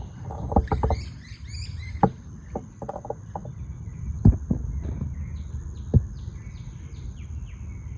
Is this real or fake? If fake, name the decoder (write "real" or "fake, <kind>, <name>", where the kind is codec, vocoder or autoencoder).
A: real